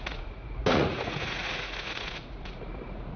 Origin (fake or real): fake